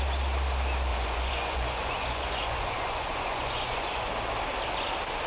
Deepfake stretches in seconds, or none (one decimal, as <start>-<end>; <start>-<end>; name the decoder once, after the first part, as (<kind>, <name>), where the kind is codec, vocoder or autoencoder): 0.9-4.1 (vocoder, Vocos)

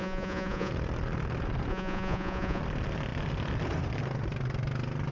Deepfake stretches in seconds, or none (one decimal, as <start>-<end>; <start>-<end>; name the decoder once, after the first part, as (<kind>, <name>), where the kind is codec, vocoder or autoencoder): 0.0-0.7 (vocoder, Vocos); 1.7-2.6